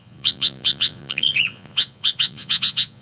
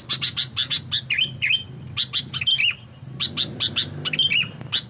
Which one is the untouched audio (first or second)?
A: second